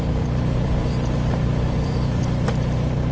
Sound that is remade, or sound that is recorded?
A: remade